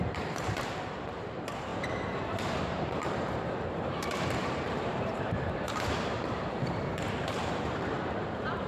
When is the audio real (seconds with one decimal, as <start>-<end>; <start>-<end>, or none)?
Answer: 1.7-2.4